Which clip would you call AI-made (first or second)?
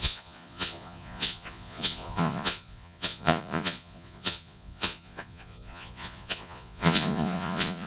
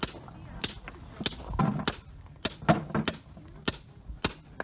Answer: first